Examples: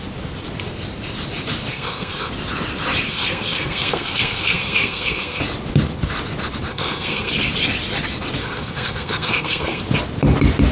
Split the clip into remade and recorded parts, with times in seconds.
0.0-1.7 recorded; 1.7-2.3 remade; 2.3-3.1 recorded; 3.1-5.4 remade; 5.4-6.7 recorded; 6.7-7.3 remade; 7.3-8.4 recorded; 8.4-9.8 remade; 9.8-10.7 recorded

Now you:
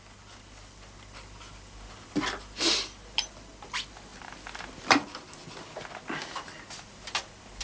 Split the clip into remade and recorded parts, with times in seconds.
0.0-7.6 recorded

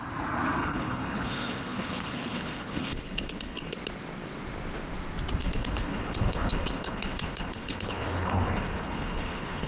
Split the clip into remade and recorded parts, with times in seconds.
0.0-0.6 recorded; 0.6-3.8 remade; 3.8-5.4 recorded; 5.4-9.7 remade